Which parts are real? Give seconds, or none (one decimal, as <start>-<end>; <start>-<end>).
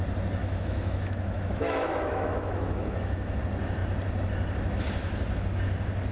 0.0-0.4; 3.4-6.1